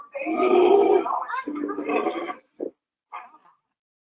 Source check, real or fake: real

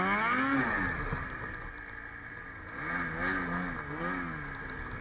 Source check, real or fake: real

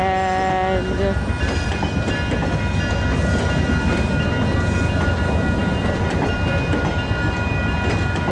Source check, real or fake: real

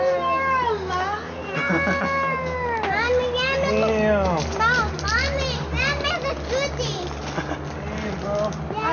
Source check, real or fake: real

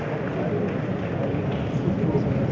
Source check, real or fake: real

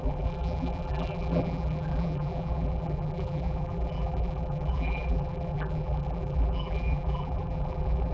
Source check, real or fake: fake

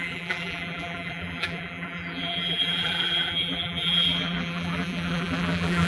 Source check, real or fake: fake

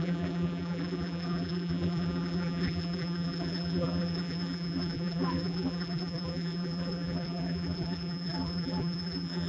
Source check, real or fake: fake